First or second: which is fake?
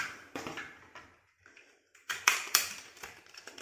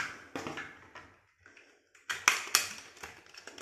first